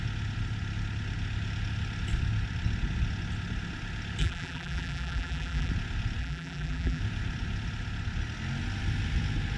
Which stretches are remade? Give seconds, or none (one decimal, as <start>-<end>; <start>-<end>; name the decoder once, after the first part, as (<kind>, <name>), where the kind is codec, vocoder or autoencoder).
4.2-5.7 (vocoder, BigVGAN v2); 6.2-7.0